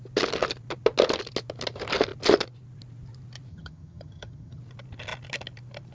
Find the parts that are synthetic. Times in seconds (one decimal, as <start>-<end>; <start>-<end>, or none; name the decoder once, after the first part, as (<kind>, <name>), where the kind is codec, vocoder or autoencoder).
3.5-4.6 (vocoder, HiFi-GAN)